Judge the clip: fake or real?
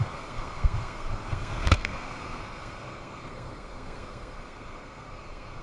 fake